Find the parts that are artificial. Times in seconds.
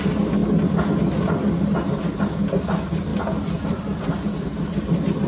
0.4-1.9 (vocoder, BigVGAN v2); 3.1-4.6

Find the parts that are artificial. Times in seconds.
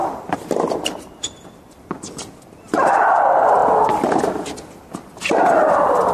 0.0-3.6 (vocoder, BigVGAN v2); 5.3-6.1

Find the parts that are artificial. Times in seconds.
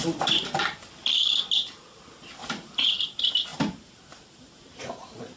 none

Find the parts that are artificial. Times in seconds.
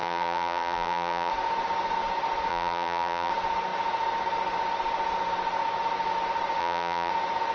0.0-1.3 (vocoder, BigVGAN v2); 2.5-3.3; 6.6-7.1